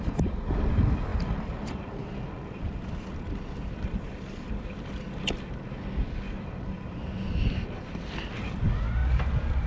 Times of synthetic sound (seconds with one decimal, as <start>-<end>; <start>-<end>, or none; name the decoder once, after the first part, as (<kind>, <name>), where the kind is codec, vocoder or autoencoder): 1.1-4.5 (vocoder, BigVGAN v2); 9.0-9.7